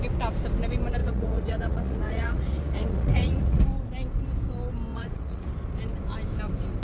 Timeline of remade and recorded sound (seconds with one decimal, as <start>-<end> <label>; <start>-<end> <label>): 0.0-1.0 recorded; 1.0-3.6 remade; 3.6-4.9 recorded; 4.9-5.5 remade; 5.5-6.8 recorded